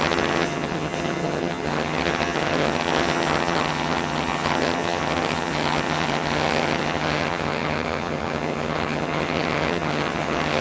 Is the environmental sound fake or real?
fake